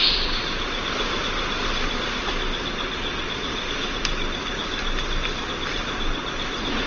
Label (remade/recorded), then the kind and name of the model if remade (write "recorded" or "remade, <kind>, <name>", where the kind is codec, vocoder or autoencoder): recorded